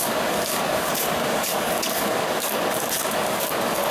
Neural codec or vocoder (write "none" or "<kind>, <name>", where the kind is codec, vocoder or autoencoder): codec, DAC